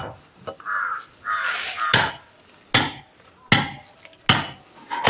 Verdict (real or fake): real